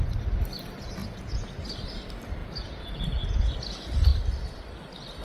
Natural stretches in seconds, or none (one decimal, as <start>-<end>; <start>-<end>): 0.0-1.0; 1.6-2.4; 2.9-5.2